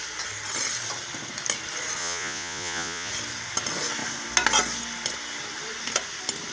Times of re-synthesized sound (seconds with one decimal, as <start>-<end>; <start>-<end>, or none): 2.0-3.1